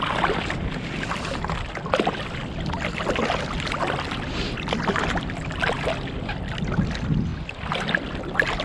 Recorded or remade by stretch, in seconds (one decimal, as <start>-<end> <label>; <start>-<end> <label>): 0.0-8.6 recorded

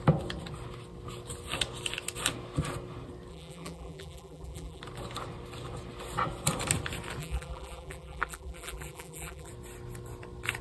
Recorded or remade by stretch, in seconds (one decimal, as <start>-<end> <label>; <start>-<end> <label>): 0.0-3.3 recorded; 3.3-4.8 remade; 4.8-7.2 recorded; 7.2-9.5 remade; 9.5-10.6 recorded

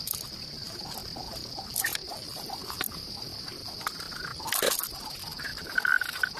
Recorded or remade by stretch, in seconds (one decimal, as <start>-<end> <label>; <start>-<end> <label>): 0.0-2.9 remade; 2.9-3.6 recorded; 3.6-4.2 remade; 4.2-5.5 recorded; 5.5-6.4 remade

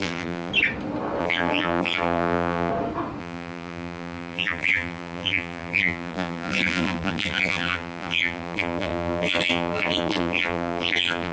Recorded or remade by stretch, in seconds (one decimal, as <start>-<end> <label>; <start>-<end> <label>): 0.0-0.5 remade; 0.5-1.2 recorded; 1.2-2.7 remade; 2.7-3.2 recorded; 3.2-11.3 remade

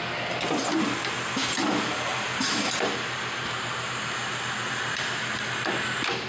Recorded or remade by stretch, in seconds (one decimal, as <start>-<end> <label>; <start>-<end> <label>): 0.0-2.1 recorded; 2.1-5.3 remade; 5.3-6.3 recorded

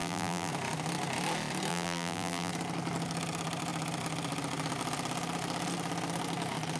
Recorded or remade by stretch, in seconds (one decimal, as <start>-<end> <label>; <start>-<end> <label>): 0.0-0.5 remade; 0.5-1.7 recorded; 1.7-2.5 remade; 2.5-6.8 recorded